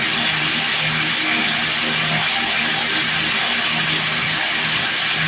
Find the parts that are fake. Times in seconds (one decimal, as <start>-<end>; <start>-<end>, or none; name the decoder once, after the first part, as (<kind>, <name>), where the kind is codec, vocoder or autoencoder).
none